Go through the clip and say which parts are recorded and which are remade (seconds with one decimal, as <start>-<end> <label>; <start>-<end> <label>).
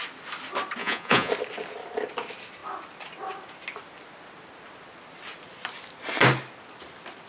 0.0-0.8 recorded; 0.8-1.3 remade; 1.3-7.3 recorded